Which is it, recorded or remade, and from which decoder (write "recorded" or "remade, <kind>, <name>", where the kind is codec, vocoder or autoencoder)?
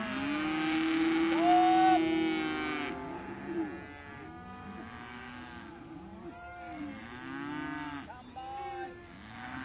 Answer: recorded